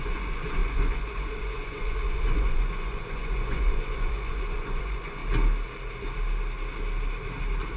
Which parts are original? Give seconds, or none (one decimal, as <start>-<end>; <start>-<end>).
5.2-7.8